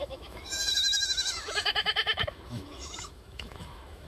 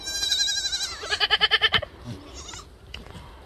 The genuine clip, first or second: second